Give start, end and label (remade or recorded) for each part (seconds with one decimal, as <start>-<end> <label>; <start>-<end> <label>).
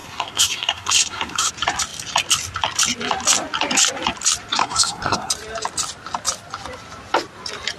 0.0-1.5 remade; 1.5-4.6 recorded; 4.6-5.3 remade; 5.3-7.8 recorded